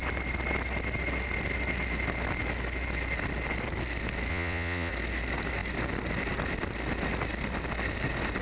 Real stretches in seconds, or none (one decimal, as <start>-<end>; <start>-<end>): 0.0-4.3; 4.9-8.4